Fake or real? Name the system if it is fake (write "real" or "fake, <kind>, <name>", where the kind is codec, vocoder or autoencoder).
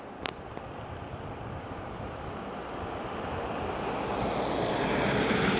real